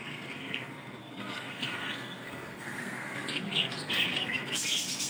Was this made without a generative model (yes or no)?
no